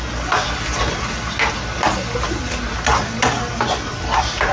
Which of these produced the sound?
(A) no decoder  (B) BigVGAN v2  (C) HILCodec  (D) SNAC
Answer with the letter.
A